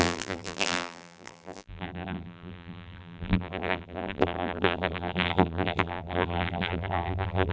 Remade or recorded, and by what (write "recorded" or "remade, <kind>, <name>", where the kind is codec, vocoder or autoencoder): remade, vocoder, BigVGAN v2